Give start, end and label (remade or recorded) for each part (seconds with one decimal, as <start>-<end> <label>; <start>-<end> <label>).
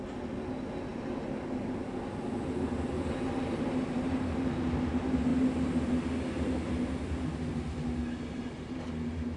0.0-9.4 recorded